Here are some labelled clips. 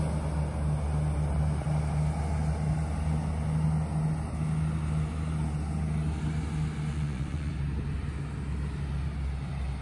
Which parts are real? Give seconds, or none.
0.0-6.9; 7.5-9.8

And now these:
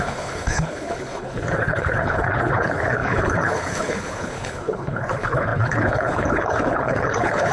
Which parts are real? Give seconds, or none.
none

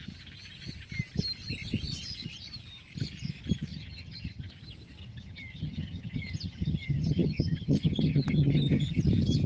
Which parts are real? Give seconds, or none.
0.0-3.7; 4.5-5.0; 9.0-9.5